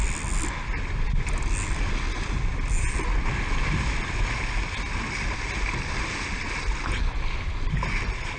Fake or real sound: real